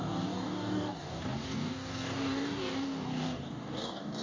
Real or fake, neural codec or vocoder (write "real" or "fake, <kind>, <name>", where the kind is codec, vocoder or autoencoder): fake, codec, DAC